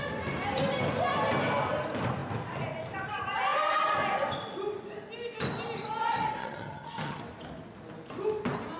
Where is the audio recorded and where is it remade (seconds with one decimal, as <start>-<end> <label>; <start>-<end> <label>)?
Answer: 0.0-6.4 recorded; 6.4-7.2 remade; 7.2-8.8 recorded